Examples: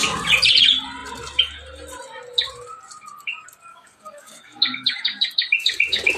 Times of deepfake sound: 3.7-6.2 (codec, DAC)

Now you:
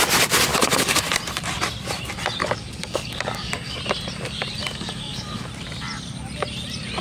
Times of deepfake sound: 0.5-1.0 (codec, DAC); 2.4-3.8; 4.6-5.5

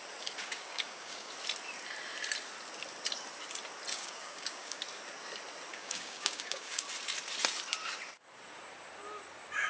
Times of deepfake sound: 0.4-1.3 (codec, DAC); 3.9-4.8; 5.7-6.8

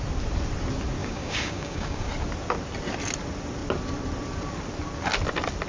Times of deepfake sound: 1.0-2.1 (codec, DAC)

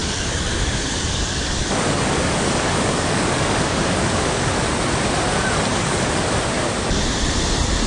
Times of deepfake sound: 0.0-4.5 (codec, DAC); 5.7-6.3